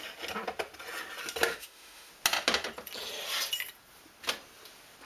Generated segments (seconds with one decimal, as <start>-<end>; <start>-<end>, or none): 1.5-2.1